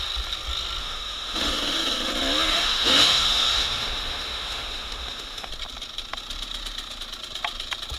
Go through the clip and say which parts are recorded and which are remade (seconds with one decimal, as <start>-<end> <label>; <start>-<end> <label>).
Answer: 0.0-0.8 recorded; 0.8-2.1 remade; 2.1-2.5 recorded; 2.5-5.5 remade; 5.5-8.0 recorded

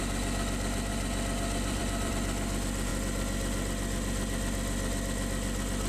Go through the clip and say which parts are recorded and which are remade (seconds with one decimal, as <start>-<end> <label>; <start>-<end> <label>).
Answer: 0.0-0.9 recorded; 0.9-2.1 remade; 2.1-5.9 recorded

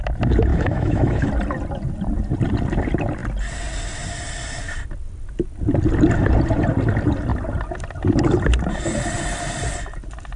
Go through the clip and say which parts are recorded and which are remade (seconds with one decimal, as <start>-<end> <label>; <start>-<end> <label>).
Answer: 0.0-0.5 recorded; 0.5-1.3 remade; 1.3-10.4 recorded

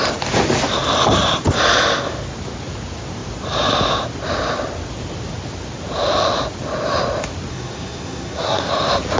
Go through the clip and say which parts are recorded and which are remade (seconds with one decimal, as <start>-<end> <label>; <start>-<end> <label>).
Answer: 0.0-7.5 recorded; 7.5-8.7 remade; 8.7-9.2 recorded

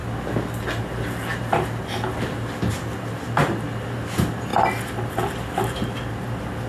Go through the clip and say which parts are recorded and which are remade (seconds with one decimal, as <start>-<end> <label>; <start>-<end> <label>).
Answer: 0.0-6.7 recorded